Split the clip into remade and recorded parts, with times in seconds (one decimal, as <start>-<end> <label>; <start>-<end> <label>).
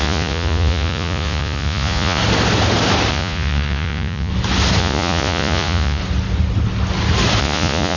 0.0-2.2 remade; 2.2-3.1 recorded; 3.1-4.3 remade; 4.3-4.8 recorded; 4.8-6.0 remade; 6.0-7.4 recorded; 7.4-8.0 remade